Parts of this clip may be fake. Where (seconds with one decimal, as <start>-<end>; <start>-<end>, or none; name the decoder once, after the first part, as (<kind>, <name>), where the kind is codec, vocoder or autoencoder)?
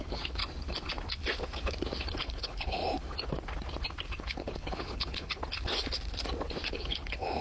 0.0-0.4 (codec, HILCodec); 2.2-2.8; 4.2-5.4; 6.7-7.4